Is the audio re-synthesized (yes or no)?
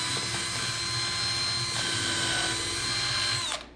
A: no